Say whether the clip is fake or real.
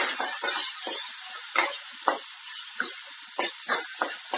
real